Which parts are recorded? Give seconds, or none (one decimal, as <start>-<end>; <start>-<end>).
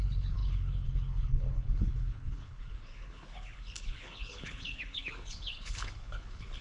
none